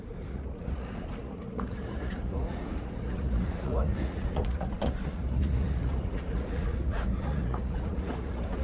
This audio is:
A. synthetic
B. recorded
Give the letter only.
A